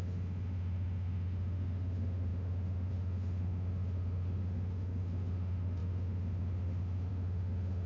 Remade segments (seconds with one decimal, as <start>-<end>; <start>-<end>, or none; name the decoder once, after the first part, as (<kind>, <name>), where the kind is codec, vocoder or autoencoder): 0.0-7.9 (autoencoder, DAC-VAE)

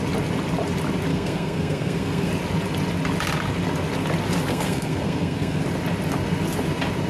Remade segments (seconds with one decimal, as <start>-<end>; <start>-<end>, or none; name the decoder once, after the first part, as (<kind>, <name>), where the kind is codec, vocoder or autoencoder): 1.1-2.3 (codec, SNAC); 4.5-5.6

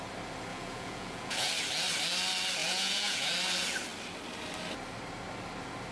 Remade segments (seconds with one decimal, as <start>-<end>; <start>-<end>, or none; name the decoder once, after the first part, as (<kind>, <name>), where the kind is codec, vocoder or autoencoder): 0.5-1.5 (vocoder, Vocos); 2.6-3.3

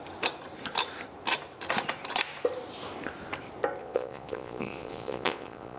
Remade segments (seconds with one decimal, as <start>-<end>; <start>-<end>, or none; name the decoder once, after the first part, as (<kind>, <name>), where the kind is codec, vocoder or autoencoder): 3.8-5.8 (vocoder, Vocos)

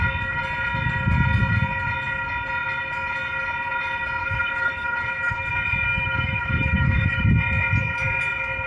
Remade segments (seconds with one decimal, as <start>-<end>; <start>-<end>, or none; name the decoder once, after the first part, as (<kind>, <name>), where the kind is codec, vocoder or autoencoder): 4.2-5.5 (autoencoder, DAC-VAE); 5.9-7.2

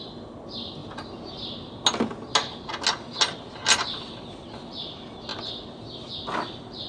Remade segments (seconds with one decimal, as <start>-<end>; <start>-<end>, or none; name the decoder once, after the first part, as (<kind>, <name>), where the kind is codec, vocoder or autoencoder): none

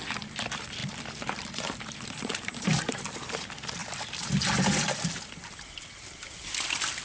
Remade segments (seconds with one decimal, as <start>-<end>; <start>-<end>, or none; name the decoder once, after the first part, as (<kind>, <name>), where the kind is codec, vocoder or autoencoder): 0.8-2.8 (vocoder, BigVGAN v2)

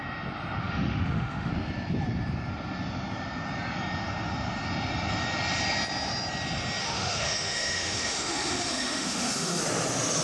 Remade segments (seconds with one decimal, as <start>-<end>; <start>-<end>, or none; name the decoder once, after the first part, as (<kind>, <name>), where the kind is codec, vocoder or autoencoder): 0.6-1.5 (autoencoder, DAC-VAE); 6.8-9.6